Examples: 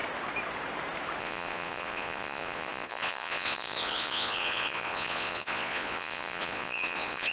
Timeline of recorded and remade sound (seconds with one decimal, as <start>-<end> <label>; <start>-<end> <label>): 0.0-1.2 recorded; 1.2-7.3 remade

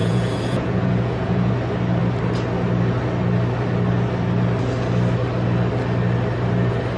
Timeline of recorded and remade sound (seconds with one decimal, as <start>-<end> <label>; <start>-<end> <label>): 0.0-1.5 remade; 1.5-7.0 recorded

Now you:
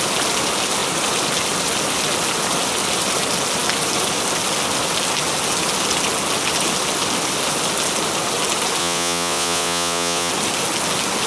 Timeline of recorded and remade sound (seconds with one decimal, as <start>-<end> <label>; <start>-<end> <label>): 0.0-8.8 recorded; 8.8-10.3 remade; 10.3-11.3 recorded